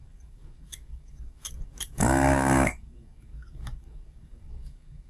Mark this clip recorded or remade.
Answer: remade